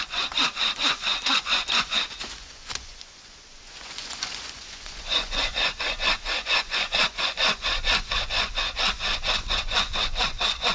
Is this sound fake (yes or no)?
yes